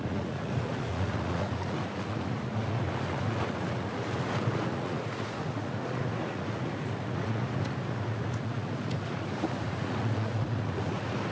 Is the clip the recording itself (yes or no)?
no